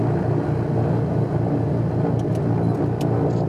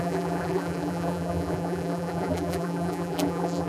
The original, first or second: first